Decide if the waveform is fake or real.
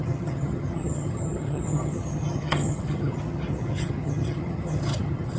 fake